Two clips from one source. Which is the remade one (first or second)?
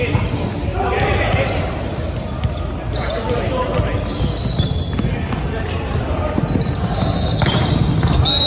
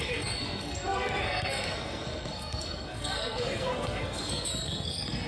second